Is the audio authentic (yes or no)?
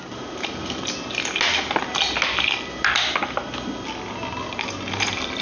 yes